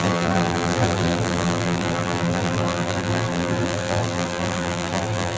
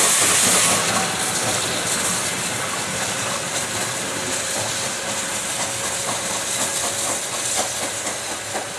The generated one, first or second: first